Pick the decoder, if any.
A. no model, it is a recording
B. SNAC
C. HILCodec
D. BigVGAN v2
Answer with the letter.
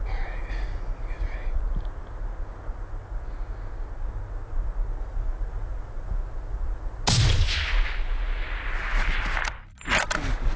A